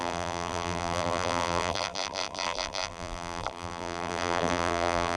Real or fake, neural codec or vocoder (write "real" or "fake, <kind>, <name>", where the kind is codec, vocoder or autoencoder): fake, vocoder, BigVGAN v2